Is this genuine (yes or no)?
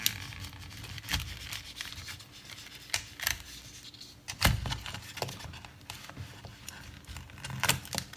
yes